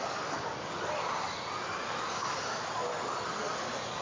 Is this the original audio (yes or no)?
yes